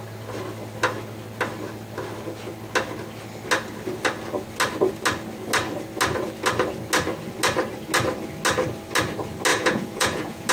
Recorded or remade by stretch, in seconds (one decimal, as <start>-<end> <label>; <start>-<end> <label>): 0.0-9.5 recorded; 9.5-10.5 remade